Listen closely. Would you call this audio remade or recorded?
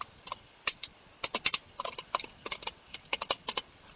recorded